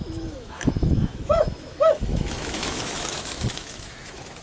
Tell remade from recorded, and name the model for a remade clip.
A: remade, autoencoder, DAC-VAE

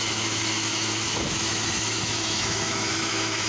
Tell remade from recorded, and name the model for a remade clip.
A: remade, autoencoder, DAC-VAE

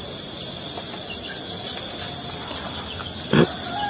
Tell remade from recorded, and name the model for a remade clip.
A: recorded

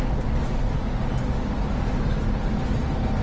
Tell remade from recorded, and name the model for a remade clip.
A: recorded